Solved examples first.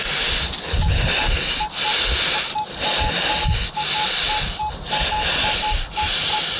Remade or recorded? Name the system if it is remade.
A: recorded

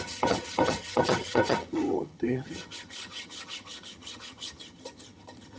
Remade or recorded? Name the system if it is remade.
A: remade, vocoder, HiFi-GAN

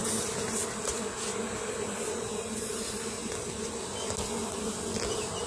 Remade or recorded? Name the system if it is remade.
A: recorded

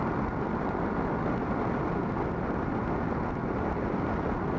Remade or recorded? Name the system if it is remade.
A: recorded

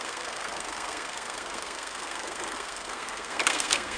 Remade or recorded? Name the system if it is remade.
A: remade, codec, SNAC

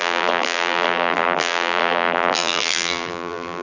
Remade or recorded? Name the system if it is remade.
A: remade, vocoder, BigVGAN v2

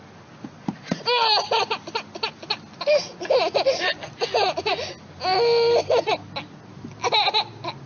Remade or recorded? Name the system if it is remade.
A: recorded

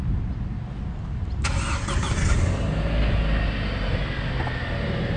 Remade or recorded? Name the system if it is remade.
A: recorded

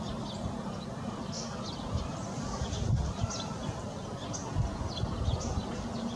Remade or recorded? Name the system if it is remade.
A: recorded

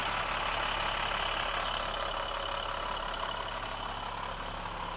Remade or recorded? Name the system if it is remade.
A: recorded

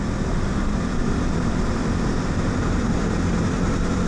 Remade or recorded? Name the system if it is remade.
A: remade, vocoder, BigVGAN v2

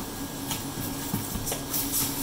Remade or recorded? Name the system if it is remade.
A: recorded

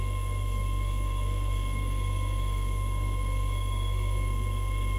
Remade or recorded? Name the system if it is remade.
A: remade, codec, SNAC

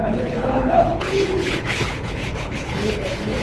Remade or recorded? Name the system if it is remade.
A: remade, codec, HILCodec